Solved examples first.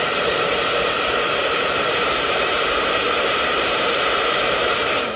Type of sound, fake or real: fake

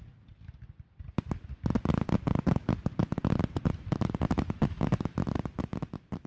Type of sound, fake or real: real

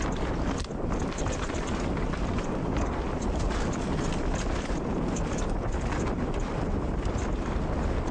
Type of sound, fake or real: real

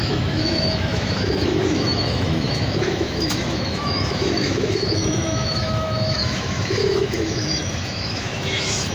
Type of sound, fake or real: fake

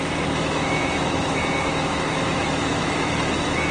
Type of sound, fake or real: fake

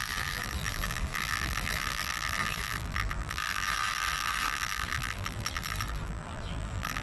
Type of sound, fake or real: fake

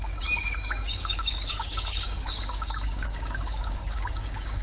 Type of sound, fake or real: fake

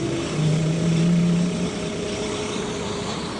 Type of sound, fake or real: fake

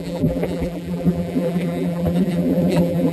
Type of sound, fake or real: fake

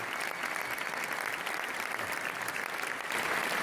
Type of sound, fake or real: real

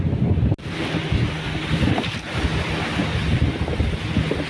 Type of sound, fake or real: real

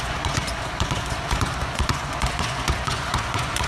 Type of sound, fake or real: fake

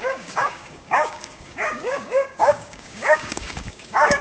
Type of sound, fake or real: fake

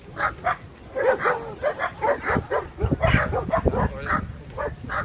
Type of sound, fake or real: real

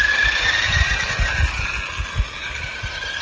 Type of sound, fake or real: real